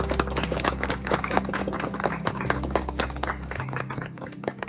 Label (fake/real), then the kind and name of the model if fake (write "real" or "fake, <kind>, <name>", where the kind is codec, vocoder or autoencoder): fake, codec, DAC